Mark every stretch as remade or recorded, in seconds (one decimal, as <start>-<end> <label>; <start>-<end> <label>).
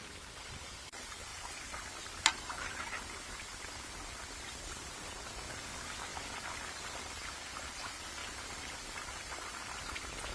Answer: 0.0-10.3 recorded